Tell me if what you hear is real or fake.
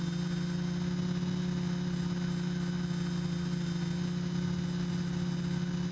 real